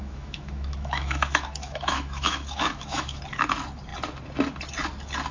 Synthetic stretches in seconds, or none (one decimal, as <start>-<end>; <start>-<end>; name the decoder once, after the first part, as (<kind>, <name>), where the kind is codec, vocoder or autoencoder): 0.0-3.2 (autoencoder, DAC-VAE)

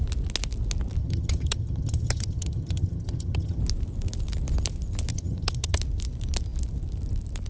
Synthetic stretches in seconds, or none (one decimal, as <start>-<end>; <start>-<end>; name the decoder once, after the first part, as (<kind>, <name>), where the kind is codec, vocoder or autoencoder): 1.0-3.6 (vocoder, HiFi-GAN); 5.1-5.8

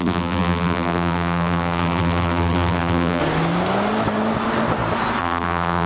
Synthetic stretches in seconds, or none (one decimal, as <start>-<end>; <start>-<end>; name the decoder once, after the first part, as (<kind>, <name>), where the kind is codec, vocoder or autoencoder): 0.0-3.2 (vocoder, BigVGAN v2); 5.2-5.9

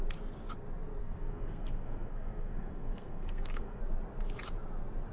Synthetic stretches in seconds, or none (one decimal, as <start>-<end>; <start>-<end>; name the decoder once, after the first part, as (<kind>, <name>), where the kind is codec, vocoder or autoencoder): 1.0-3.8 (codec, SNAC)